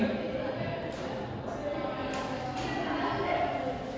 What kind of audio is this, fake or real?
real